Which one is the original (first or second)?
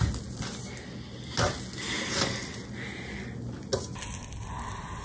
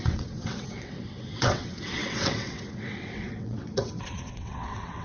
first